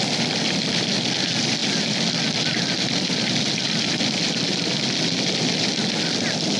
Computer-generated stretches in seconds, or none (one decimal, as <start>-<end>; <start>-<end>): none